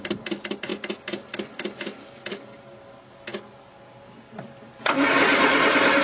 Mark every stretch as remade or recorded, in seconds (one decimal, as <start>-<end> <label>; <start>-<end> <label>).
0.0-6.0 recorded